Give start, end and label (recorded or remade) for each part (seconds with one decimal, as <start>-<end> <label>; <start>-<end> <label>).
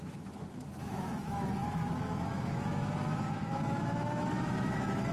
0.0-5.1 remade